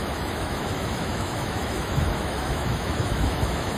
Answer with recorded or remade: remade